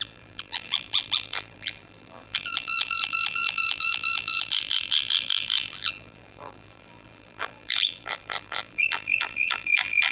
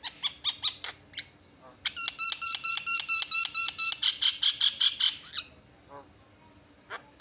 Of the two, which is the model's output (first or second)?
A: first